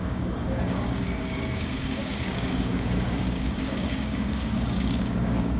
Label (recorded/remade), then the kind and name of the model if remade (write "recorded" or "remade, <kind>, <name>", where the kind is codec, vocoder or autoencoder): remade, codec, DAC